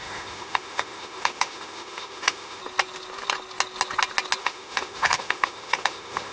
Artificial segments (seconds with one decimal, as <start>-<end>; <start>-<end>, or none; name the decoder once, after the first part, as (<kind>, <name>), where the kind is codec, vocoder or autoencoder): 0.0-2.6 (autoencoder, DAC-VAE); 4.4-6.3